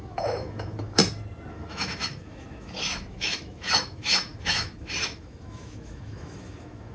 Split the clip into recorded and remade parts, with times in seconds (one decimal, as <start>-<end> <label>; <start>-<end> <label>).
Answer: 0.0-1.0 remade; 1.0-1.5 recorded; 1.5-6.9 remade